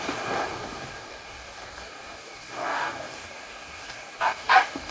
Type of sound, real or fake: fake